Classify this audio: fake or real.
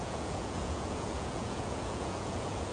fake